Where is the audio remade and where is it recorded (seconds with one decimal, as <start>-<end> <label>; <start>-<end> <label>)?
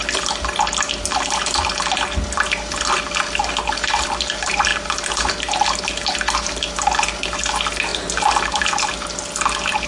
0.0-9.9 recorded